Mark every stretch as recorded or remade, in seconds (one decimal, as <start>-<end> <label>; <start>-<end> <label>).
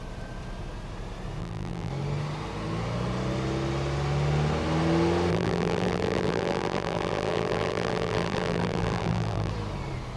0.0-1.4 recorded; 1.4-1.9 remade; 1.9-5.3 recorded; 5.3-9.5 remade; 9.5-10.2 recorded